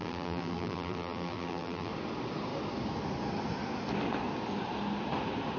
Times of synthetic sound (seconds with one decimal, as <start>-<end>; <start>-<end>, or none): 0.0-1.9